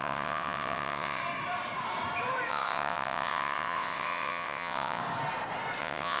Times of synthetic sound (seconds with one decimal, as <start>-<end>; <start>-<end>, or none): 0.0-1.2; 2.5-5.0; 5.8-6.2